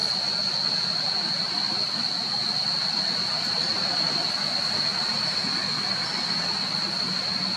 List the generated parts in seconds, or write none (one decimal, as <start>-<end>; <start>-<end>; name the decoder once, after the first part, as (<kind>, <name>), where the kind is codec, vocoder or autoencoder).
none